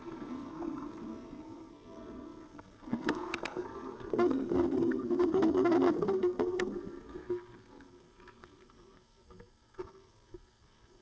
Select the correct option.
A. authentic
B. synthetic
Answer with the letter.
B